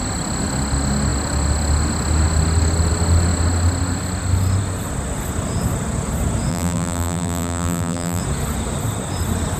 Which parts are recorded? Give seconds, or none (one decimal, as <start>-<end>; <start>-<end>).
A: 0.0-6.5; 8.2-9.6